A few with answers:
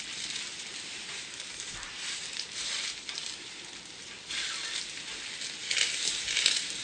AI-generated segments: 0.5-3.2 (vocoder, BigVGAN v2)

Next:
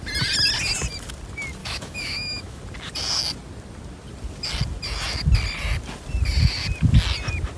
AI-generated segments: 1.6-2.6 (autoencoder, DAC-VAE)